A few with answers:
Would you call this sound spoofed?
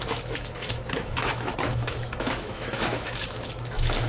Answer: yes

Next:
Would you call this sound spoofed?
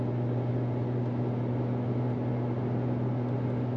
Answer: no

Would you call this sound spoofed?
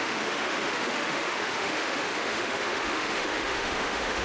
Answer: yes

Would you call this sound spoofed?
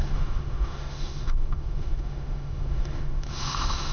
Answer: yes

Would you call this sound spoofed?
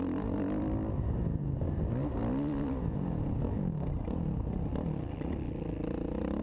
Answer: no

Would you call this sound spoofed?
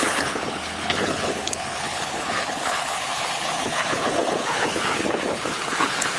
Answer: yes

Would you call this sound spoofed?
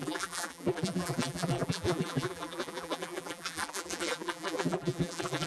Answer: yes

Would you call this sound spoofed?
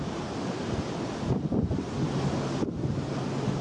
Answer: no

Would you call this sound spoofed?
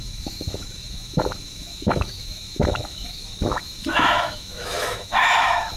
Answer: yes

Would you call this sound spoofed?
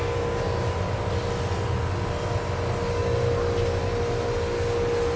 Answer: no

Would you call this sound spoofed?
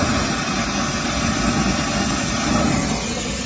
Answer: no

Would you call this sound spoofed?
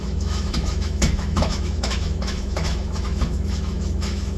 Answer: yes